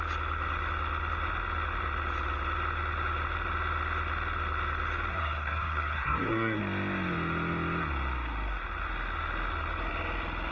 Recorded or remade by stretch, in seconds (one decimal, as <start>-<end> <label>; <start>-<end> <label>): 0.0-5.1 recorded; 5.1-6.6 remade; 6.6-10.5 recorded